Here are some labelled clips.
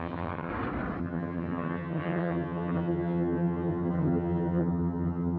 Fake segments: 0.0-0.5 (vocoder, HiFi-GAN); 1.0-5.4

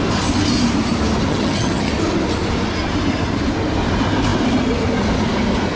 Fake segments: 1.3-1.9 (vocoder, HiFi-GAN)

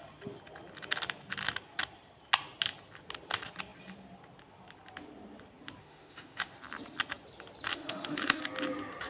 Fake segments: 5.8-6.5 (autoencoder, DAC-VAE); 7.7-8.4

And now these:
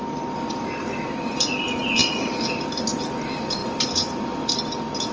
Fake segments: 2.0-2.6 (vocoder, BigVGAN v2)

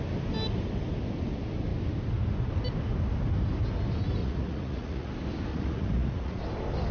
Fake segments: 4.2-5.1 (vocoder, Vocos); 5.5-6.4